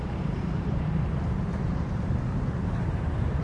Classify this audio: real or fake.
fake